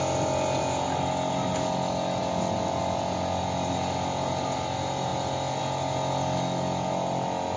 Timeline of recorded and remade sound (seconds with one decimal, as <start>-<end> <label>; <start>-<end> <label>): 0.0-7.6 recorded